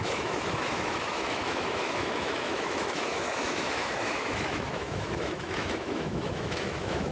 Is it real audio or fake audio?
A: fake